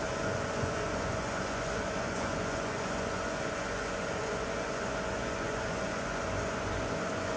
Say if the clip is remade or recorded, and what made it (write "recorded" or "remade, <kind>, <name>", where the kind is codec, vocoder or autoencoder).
remade, vocoder, Vocos